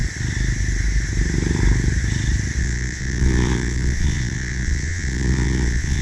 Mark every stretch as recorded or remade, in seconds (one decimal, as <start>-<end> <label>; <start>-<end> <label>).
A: 0.0-2.6 recorded; 2.6-6.0 remade